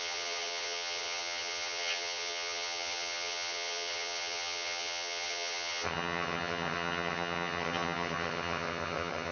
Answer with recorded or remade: remade